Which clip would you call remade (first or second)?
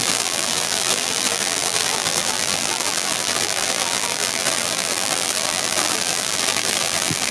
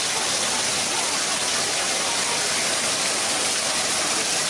first